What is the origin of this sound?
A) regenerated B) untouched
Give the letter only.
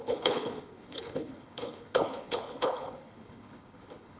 A